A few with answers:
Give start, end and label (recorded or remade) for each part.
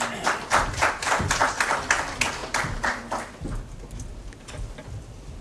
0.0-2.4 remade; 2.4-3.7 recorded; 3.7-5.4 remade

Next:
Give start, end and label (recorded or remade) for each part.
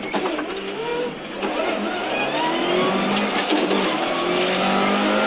0.0-5.3 recorded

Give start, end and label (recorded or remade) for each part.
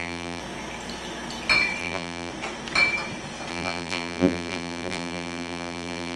0.0-0.4 remade; 0.4-1.8 recorded; 1.8-2.3 remade; 2.3-3.5 recorded; 3.5-6.2 remade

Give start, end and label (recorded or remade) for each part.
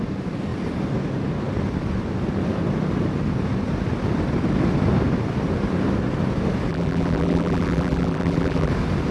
0.0-6.7 recorded; 6.7-8.7 remade; 8.7-9.1 recorded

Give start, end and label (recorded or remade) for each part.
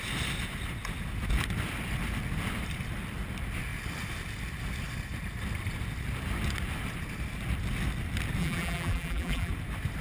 0.0-8.4 recorded; 8.4-9.5 remade; 9.5-10.0 recorded